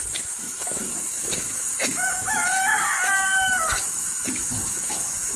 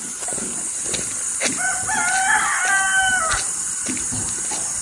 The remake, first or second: first